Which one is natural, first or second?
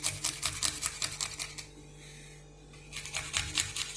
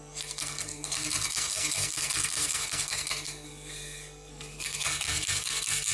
first